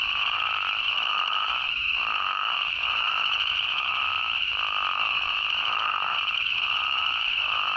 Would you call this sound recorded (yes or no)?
no